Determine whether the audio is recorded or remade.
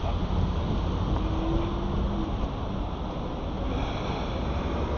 recorded